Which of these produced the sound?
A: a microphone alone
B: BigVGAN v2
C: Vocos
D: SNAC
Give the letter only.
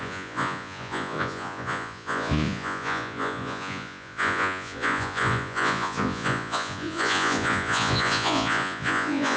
C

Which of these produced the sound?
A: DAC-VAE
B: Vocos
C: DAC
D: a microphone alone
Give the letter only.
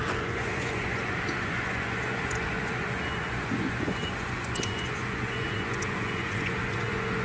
B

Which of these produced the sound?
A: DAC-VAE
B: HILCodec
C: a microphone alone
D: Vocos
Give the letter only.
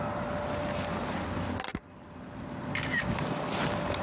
C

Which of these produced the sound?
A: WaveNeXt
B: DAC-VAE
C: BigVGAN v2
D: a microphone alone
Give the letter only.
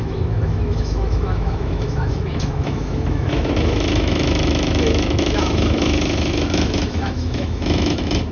B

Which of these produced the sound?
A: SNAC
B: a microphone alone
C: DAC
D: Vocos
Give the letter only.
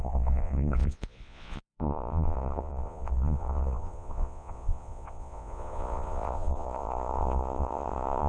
D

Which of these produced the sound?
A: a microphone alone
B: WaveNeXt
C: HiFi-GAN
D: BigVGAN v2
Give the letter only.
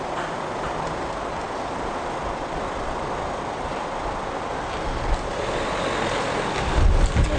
A